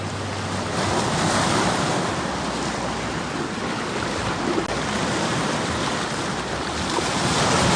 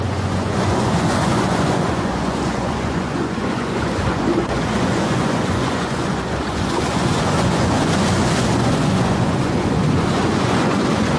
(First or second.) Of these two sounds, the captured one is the first